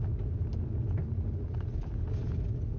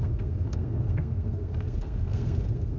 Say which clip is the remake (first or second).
second